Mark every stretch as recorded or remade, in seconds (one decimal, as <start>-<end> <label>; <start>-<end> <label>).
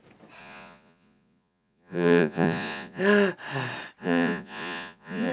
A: 0.0-0.4 recorded; 0.4-3.0 remade; 3.0-4.0 recorded; 4.0-5.3 remade